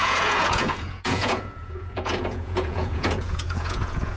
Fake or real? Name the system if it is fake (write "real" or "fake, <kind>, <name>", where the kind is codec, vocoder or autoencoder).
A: fake, vocoder, Vocos